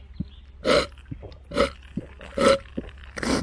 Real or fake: real